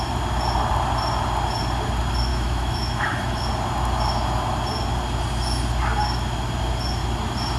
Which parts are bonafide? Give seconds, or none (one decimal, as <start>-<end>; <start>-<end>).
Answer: 0.0-2.3; 3.4-7.6